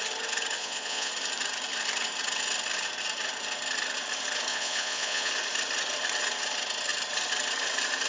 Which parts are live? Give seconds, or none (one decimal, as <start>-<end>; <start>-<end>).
0.0-0.6; 1.1-4.5; 5.3-8.1